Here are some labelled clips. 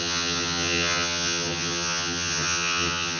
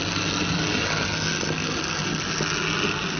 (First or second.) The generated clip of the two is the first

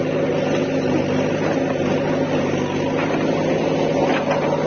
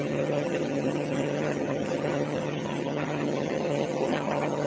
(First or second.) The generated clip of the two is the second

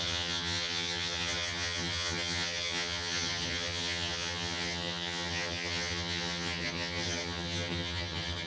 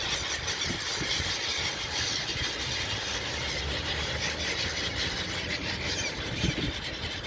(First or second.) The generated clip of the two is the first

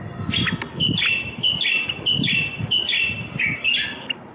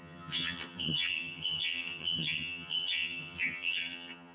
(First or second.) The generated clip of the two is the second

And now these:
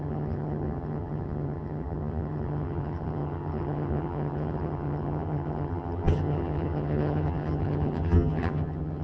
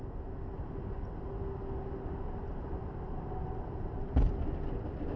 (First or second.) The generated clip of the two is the first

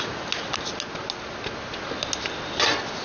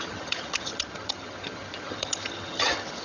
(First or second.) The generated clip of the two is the second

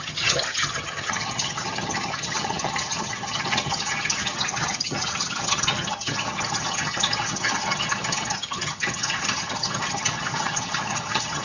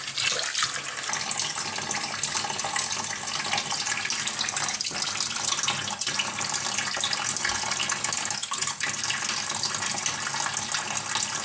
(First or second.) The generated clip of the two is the first